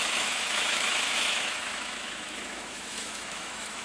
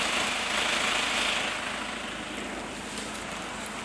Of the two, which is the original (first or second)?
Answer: second